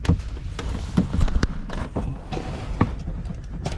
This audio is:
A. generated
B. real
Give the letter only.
B